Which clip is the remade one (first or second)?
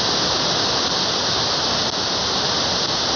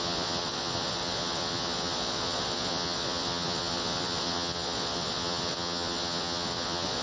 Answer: second